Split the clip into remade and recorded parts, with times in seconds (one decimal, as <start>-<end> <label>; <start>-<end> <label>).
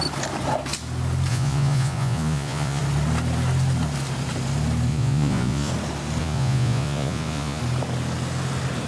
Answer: 0.0-1.3 recorded; 1.3-2.8 remade; 2.8-4.9 recorded; 4.9-5.7 remade; 5.7-6.2 recorded; 6.2-7.6 remade; 7.6-8.9 recorded